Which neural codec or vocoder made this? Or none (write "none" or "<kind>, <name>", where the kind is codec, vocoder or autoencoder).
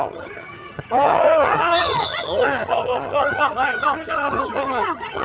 vocoder, HiFi-GAN